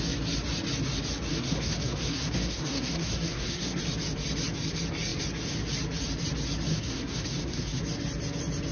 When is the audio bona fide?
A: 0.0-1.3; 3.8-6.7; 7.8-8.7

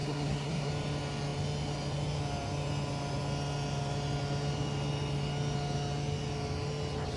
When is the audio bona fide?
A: 0.7-7.2

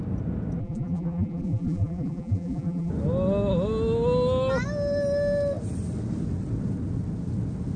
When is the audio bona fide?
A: 0.0-0.6; 2.9-7.8

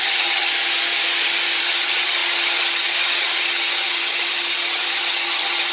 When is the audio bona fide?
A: 0.5-1.6

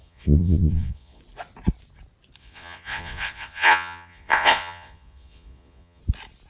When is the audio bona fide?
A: 1.2-2.4; 6.0-6.5